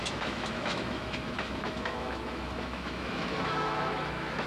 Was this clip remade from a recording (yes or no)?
yes